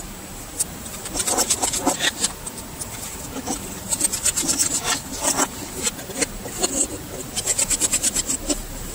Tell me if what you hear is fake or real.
real